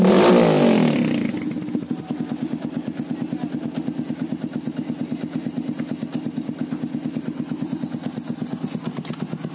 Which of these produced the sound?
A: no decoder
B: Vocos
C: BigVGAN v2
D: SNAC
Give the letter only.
A